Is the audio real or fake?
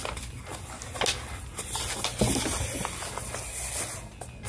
real